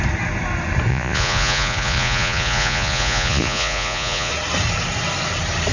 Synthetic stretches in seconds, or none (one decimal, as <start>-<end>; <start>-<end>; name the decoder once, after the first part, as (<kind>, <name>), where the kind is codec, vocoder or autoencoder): 0.9-4.3 (vocoder, Vocos)